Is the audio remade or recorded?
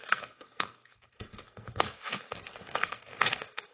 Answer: remade